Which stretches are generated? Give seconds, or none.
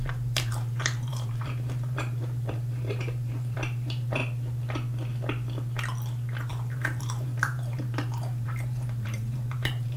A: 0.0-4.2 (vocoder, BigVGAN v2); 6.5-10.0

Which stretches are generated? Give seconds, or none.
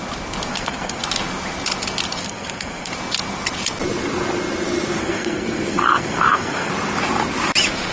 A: 0.5-1.0 (codec, SNAC); 2.2-2.9; 5.0-6.7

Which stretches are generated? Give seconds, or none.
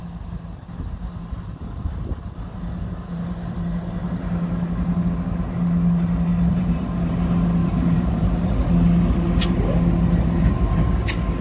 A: 6.5-7.1 (vocoder, BigVGAN v2); 7.6-8.7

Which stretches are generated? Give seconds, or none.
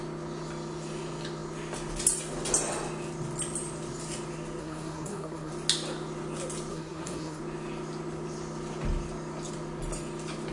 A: 4.6-5.5 (codec, SNAC); 6.7-7.4